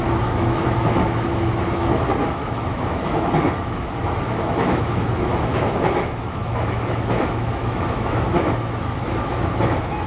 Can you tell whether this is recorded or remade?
remade